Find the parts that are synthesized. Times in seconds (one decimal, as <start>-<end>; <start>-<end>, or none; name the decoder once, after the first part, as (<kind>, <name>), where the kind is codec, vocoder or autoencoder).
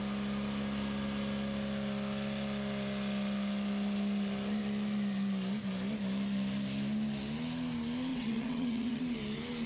8.1-9.0 (vocoder, WaveNeXt)